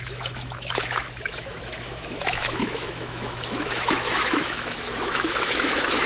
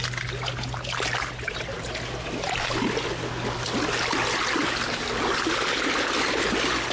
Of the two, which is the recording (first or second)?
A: second